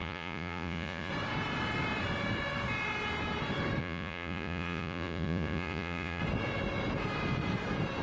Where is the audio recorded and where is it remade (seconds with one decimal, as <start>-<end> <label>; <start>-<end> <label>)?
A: 0.0-1.1 remade; 1.1-3.8 recorded; 3.8-6.2 remade; 6.2-8.0 recorded